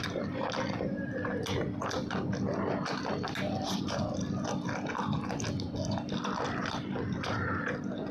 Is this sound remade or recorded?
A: recorded